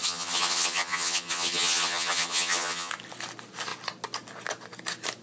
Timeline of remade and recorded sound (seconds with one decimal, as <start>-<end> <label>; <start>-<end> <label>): 0.0-2.9 remade; 2.9-5.2 recorded